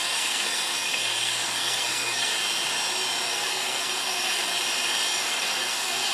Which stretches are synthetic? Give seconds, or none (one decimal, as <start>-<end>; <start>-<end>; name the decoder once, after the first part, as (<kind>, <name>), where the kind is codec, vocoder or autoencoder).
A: 0.0-2.3 (codec, SNAC); 3.3-4.5; 5.2-6.1